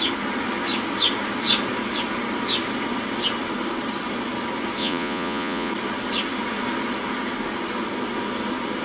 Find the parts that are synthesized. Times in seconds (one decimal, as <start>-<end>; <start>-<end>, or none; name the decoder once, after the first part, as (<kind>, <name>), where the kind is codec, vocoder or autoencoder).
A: 4.8-5.7 (vocoder, Vocos)